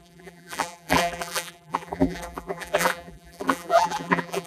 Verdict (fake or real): fake